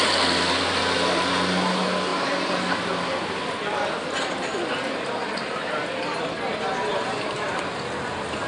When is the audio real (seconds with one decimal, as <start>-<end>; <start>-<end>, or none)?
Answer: 0.0-6.9; 7.6-8.5

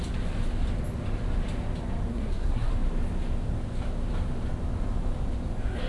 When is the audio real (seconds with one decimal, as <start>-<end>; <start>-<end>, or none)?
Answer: 0.0-2.1; 2.7-5.9

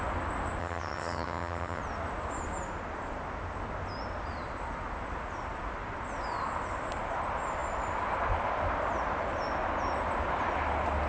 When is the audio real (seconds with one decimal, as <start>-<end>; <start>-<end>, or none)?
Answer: 0.0-0.6; 1.8-11.1

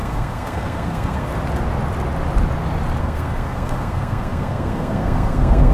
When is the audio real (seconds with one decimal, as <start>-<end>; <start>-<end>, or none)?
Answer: 1.3-3.0

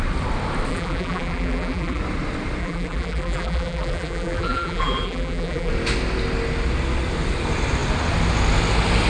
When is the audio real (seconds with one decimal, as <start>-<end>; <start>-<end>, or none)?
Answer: 0.0-0.7; 2.0-2.6; 5.7-9.1

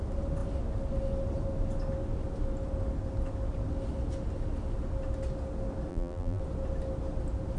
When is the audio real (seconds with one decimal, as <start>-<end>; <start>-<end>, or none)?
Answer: 0.0-5.9; 6.4-7.6

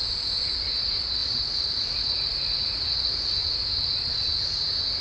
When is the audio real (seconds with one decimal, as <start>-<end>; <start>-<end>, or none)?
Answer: 0.0-1.2; 3.3-5.0